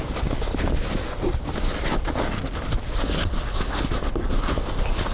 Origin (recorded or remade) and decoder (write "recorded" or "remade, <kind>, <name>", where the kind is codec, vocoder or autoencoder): recorded